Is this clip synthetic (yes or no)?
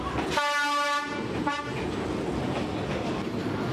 no